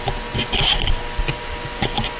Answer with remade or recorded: recorded